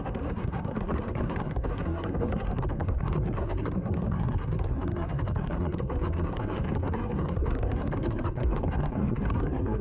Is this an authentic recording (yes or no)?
no